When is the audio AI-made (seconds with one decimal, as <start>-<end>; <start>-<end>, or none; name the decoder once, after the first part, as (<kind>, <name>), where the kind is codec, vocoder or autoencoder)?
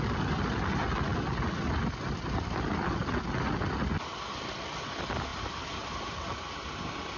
none